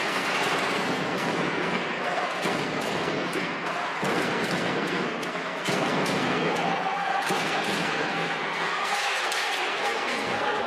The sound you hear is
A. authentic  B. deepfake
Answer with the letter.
B